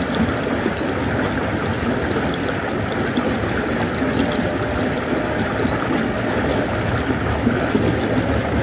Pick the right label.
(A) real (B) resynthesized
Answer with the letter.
A